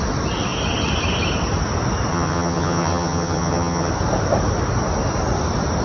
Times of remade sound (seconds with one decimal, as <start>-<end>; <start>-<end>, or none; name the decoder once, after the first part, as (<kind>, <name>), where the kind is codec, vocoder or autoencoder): 2.1-3.9 (vocoder, HiFi-GAN)